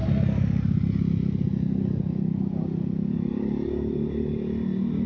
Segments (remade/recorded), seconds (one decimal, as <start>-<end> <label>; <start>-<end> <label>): 0.0-5.1 recorded